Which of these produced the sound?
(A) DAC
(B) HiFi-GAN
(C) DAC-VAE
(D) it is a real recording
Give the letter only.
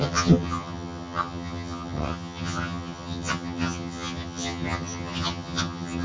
B